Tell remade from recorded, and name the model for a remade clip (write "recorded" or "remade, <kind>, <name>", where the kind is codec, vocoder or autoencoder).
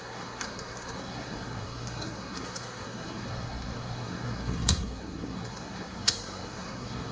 remade, codec, SNAC